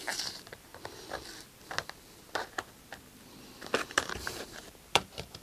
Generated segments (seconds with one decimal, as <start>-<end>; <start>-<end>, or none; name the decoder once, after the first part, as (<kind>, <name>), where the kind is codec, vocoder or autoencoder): 0.0-0.7 (vocoder, BigVGAN v2); 3.9-5.4